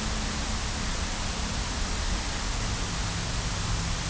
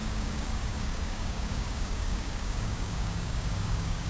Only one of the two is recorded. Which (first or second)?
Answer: first